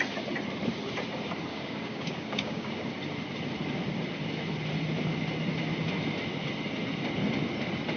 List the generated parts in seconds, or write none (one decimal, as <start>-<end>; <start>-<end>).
1.5-2.9